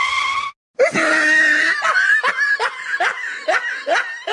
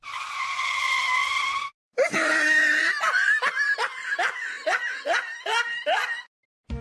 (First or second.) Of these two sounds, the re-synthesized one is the second